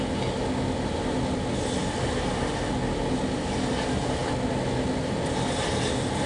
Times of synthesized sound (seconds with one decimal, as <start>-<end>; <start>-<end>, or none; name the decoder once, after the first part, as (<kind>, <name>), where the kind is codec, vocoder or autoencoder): none